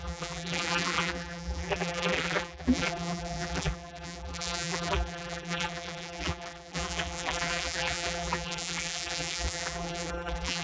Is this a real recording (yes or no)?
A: no